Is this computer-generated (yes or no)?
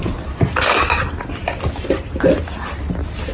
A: no